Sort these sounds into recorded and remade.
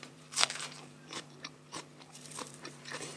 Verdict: remade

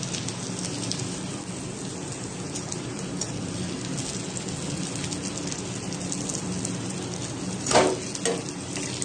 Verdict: recorded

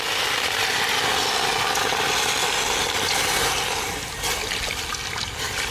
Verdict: recorded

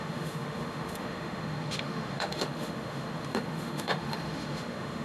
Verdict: remade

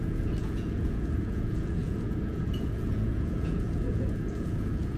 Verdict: remade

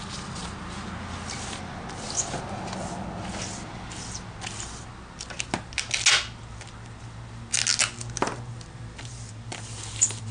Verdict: recorded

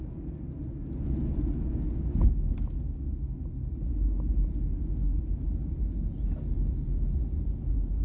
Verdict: recorded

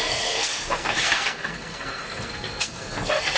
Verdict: remade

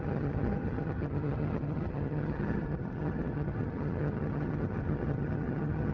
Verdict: remade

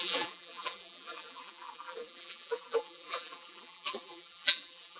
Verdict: remade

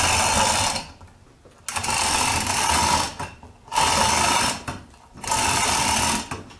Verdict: recorded